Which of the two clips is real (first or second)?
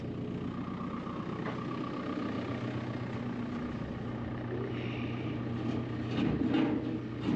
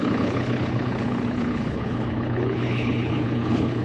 first